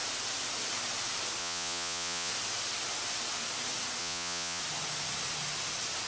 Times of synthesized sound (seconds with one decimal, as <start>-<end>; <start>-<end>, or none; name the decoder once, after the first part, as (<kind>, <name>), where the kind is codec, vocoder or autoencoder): 1.4-2.3 (vocoder, Vocos); 4.0-4.6